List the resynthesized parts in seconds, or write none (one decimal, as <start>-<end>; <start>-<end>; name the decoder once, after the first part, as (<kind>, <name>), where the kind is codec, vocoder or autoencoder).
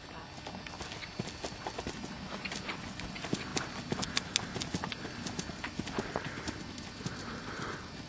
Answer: none